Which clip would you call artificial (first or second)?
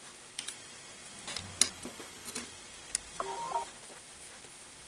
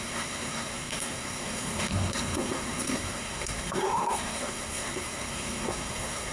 second